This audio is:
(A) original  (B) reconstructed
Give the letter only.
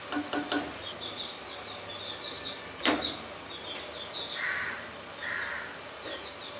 A